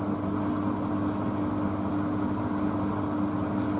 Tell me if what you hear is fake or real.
real